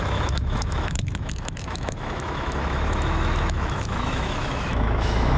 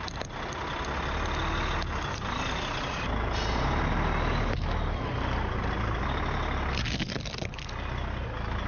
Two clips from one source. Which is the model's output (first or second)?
first